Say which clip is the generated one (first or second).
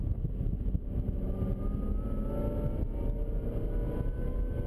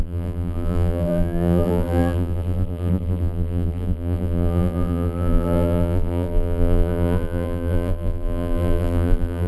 second